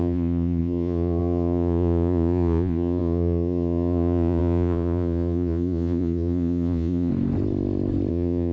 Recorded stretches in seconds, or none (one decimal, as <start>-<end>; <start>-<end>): 7.1-8.1